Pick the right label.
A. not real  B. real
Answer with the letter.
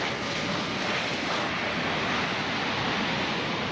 B